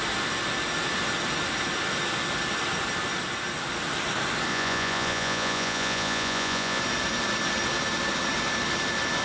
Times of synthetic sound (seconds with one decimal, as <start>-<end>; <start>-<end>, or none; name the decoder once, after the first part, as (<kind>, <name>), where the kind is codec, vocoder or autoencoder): 4.5-6.8 (vocoder, Vocos)